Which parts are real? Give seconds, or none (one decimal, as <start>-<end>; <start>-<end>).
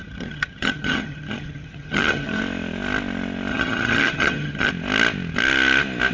2.4-3.5; 4.7-6.1